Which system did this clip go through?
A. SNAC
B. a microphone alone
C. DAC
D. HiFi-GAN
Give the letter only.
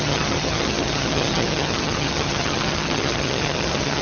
D